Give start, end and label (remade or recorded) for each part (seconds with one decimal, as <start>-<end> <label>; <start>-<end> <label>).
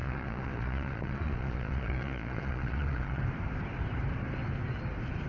0.0-3.2 remade; 3.2-5.3 recorded